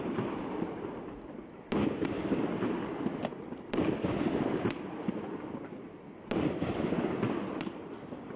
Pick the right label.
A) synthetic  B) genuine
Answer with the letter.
B